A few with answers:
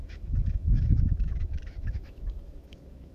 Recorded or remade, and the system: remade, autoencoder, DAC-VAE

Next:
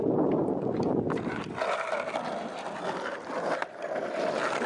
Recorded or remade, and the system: recorded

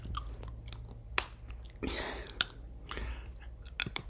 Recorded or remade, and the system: recorded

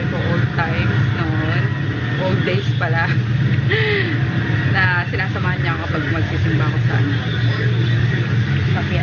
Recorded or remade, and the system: recorded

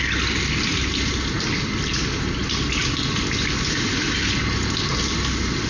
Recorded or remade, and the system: recorded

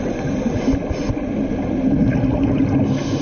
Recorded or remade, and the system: recorded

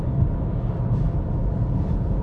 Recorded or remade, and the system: recorded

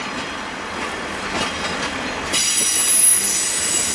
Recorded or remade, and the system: recorded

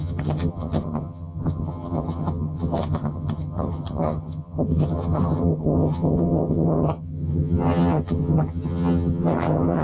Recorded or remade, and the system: remade, vocoder, HiFi-GAN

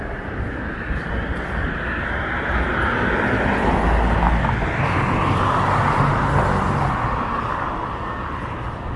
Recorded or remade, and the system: recorded